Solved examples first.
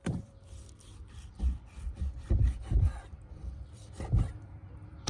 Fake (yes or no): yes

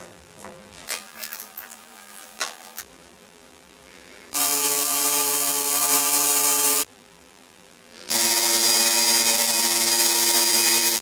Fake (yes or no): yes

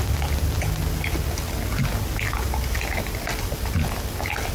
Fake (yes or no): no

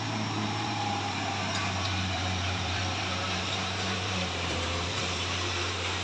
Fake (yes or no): yes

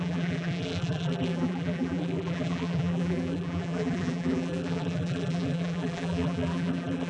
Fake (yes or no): yes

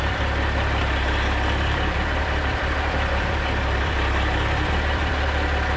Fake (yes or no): yes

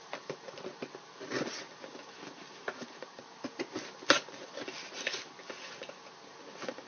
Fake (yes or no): no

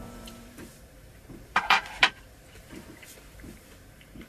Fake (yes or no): yes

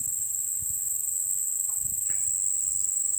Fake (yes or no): no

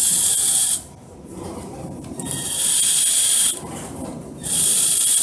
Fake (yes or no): yes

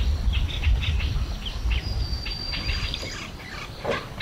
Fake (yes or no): no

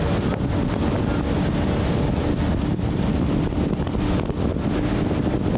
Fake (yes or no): no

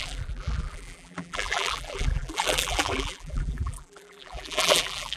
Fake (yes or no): yes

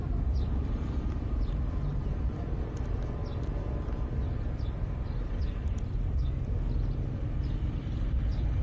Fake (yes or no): yes